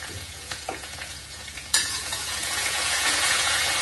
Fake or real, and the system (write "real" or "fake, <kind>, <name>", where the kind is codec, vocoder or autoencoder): fake, vocoder, Vocos